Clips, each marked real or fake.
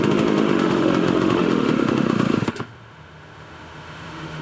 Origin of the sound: fake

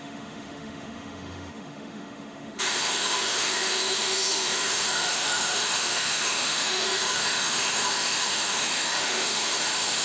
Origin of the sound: fake